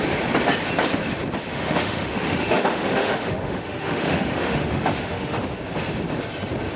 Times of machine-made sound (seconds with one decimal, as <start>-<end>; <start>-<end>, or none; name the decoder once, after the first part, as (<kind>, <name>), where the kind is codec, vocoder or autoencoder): 1.5-5.6 (autoencoder, DAC-VAE)